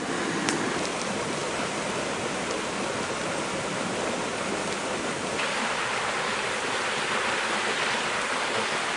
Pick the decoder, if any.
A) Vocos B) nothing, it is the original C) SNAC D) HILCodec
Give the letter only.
B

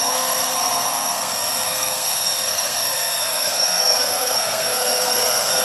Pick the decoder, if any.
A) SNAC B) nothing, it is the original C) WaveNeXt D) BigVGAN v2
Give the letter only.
A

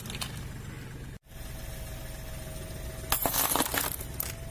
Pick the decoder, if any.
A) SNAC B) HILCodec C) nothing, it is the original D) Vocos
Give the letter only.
C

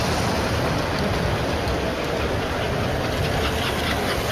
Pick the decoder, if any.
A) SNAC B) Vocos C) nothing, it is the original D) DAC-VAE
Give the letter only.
C